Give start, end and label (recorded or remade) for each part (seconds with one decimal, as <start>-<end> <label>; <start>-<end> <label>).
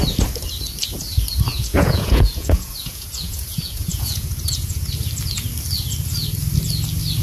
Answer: 0.0-1.5 recorded; 1.5-4.9 remade; 4.9-7.2 recorded